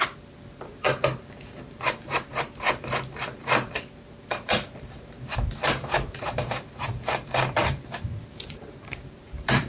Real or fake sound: fake